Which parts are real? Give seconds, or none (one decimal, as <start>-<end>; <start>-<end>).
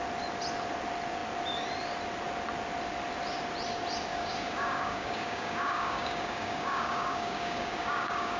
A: 0.0-4.1